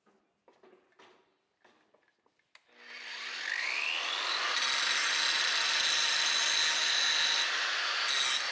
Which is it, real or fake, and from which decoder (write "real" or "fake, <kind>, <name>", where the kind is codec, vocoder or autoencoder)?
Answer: real